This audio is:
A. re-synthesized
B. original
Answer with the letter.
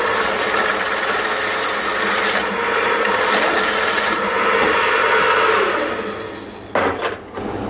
B